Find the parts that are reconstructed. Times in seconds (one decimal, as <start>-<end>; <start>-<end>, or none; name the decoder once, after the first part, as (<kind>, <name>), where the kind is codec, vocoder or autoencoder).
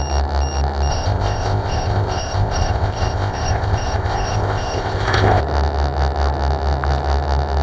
0.9-5.4 (codec, ZipCodec)